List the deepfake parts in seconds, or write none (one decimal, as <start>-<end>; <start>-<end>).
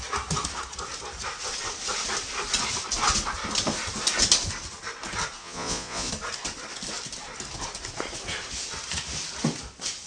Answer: 5.4-6.1